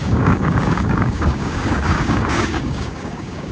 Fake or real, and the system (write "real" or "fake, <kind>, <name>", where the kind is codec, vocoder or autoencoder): fake, codec, DAC